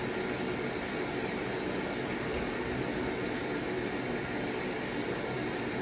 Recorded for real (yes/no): yes